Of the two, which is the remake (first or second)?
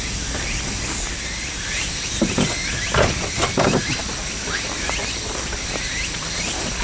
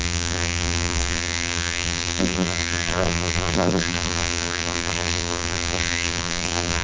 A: second